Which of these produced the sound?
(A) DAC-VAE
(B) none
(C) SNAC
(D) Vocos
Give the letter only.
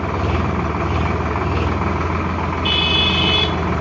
B